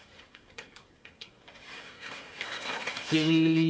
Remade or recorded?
remade